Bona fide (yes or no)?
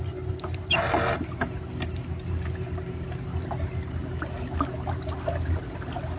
yes